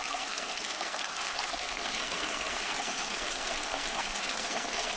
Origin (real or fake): fake